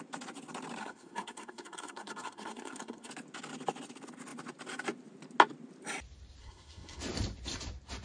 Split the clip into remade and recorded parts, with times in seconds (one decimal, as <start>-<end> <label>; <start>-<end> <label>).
0.0-0.8 recorded; 0.8-3.1 remade; 3.1-6.4 recorded; 6.4-7.0 remade; 7.0-8.0 recorded